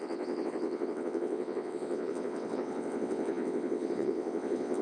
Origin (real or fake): fake